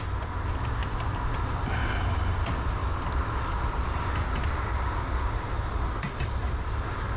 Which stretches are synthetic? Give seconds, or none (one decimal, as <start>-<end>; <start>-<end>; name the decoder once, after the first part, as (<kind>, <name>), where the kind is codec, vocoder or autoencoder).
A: 0.8-1.5 (vocoder, BigVGAN v2)